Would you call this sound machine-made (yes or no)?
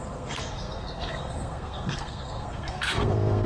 yes